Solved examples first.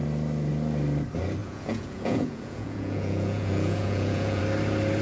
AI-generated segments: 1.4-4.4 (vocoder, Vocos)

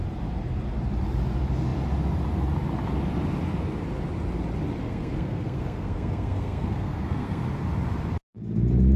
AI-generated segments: 4.8-7.4 (codec, SNAC)